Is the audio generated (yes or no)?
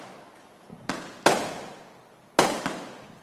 no